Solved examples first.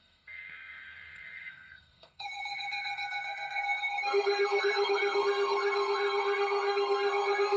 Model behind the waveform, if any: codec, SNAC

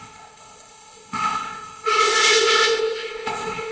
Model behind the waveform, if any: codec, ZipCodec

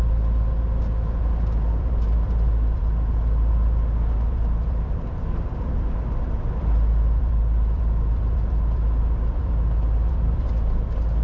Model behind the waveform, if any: vocoder, BigVGAN v2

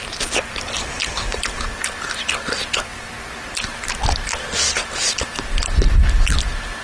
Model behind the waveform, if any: none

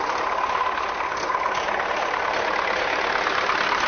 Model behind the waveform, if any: none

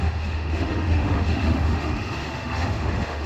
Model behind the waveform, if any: autoencoder, DAC-VAE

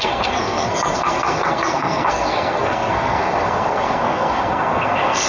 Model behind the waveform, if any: codec, SNAC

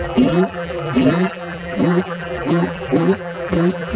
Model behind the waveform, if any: vocoder, BigVGAN v2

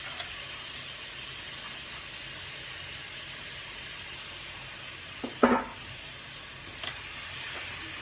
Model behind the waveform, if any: none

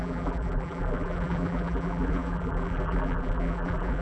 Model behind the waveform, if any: vocoder, BigVGAN v2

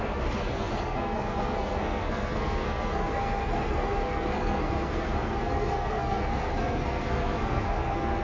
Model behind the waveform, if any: codec, SNAC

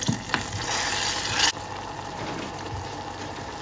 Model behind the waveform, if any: none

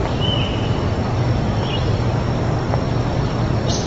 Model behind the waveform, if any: none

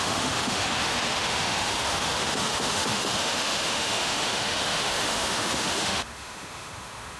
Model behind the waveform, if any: autoencoder, DAC-VAE